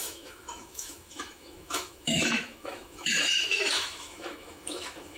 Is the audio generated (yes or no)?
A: yes